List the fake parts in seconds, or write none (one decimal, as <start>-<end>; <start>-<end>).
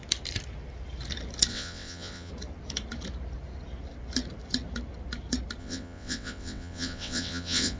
1.5-2.3; 5.6-7.8